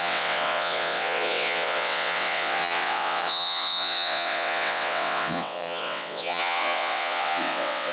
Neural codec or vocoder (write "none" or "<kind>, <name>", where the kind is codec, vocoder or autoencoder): vocoder, WaveNeXt